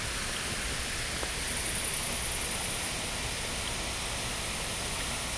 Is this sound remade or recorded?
recorded